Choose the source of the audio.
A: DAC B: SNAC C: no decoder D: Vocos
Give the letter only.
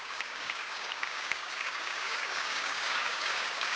A